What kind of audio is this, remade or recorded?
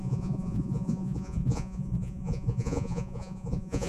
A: remade